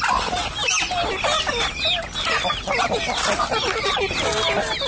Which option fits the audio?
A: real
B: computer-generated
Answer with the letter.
A